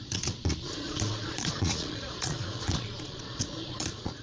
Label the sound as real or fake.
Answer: fake